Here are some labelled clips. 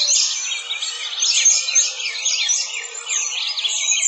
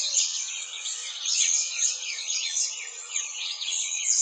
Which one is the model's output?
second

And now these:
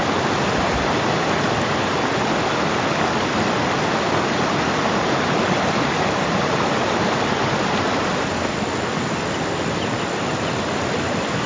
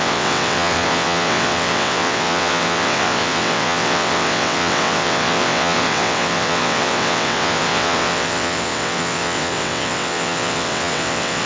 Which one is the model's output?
second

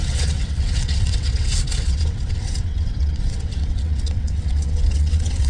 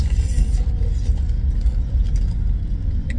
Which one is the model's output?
first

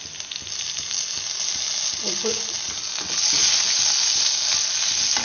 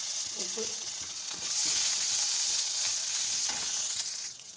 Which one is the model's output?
second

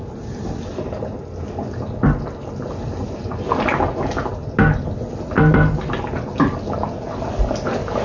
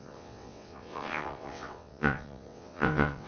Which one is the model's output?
second